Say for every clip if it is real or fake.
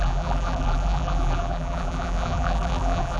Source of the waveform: fake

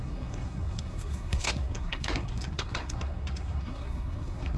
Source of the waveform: fake